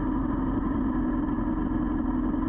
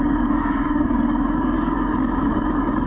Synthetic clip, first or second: second